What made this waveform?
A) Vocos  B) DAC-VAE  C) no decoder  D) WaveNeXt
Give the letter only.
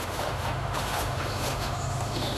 B